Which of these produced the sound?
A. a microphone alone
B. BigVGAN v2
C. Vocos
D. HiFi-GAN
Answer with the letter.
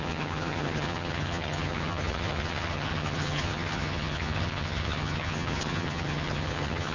D